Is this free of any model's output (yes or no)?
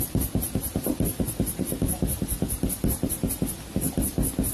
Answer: yes